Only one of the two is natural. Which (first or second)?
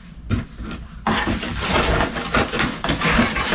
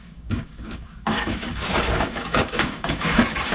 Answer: first